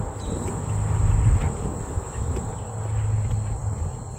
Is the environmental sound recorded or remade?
recorded